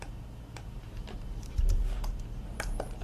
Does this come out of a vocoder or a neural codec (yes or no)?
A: yes